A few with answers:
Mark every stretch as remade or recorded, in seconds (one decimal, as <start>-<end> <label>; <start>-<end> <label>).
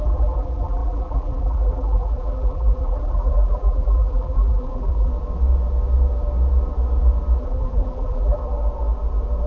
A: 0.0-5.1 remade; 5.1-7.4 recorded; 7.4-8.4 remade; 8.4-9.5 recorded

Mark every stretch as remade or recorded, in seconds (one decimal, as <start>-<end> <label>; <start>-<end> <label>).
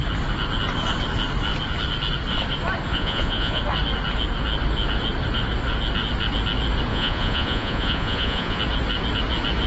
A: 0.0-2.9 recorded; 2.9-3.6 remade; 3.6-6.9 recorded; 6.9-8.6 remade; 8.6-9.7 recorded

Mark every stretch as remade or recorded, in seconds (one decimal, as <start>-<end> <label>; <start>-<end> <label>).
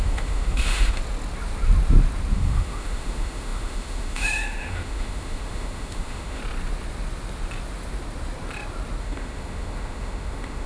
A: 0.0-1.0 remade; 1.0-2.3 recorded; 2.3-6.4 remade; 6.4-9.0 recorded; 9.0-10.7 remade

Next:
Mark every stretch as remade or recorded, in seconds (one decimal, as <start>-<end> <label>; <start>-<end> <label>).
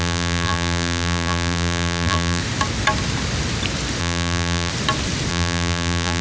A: 0.0-2.4 remade; 2.4-4.0 recorded; 4.0-4.7 remade; 4.7-5.3 recorded; 5.3-6.2 remade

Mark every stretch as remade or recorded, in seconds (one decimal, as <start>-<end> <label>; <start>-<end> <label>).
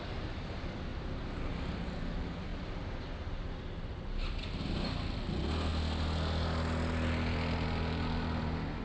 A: 0.0-8.8 recorded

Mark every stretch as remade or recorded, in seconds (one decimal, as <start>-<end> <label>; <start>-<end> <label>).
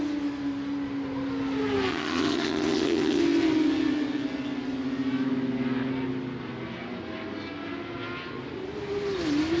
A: 0.0-1.9 recorded; 1.9-3.2 remade; 3.2-9.6 recorded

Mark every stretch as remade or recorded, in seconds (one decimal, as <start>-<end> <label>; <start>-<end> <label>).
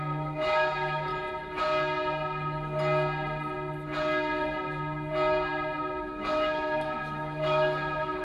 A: 0.0-1.1 remade; 1.1-6.0 recorded; 6.0-8.2 remade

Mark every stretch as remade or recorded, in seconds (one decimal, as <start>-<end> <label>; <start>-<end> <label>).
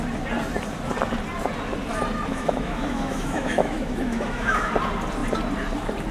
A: 0.0-2.3 recorded; 2.3-4.7 remade; 4.7-6.1 recorded